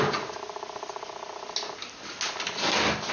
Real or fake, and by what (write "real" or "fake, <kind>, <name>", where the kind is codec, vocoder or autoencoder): real